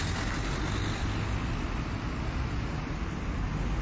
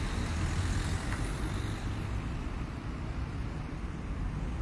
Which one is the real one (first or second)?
first